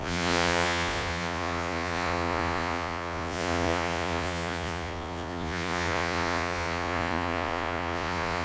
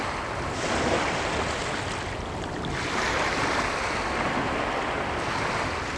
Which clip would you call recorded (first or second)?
second